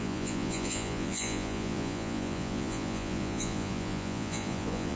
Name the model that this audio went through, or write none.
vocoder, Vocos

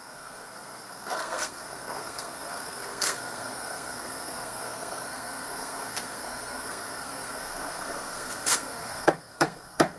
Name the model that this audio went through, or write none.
codec, SNAC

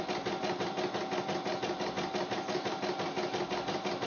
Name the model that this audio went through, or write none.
none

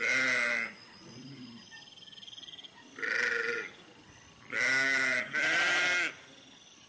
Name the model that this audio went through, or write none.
none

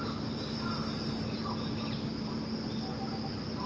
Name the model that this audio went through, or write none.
none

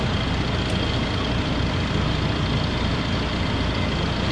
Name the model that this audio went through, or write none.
none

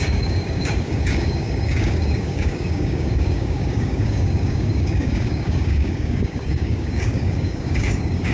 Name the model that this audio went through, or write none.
codec, DAC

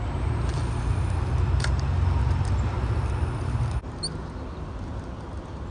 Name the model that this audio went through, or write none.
none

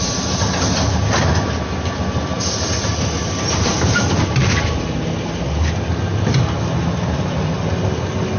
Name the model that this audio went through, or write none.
none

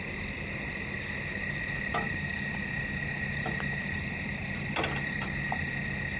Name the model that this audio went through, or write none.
none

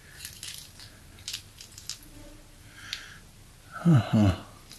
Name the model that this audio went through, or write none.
none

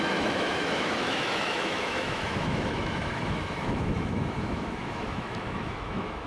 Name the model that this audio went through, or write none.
autoencoder, DAC-VAE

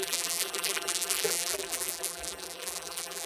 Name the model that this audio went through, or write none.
vocoder, BigVGAN v2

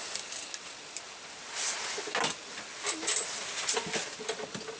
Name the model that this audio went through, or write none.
none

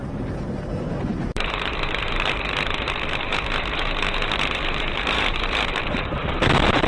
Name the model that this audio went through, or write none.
vocoder, BigVGAN v2